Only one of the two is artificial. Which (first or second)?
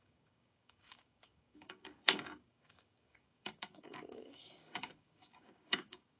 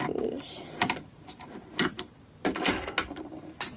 first